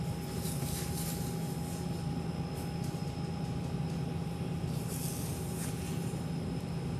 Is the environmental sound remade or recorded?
recorded